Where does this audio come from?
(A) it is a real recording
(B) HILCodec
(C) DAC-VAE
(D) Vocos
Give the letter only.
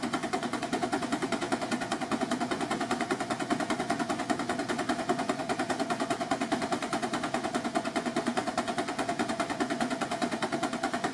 D